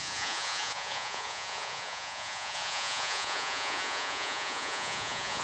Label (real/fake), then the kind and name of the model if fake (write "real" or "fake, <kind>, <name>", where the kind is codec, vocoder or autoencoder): fake, vocoder, Vocos